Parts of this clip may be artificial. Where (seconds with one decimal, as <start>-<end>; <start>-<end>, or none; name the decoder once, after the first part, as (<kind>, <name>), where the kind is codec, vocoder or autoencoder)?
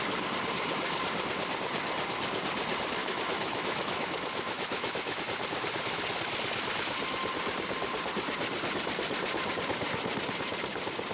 3.0-5.2 (autoencoder, DAC-VAE)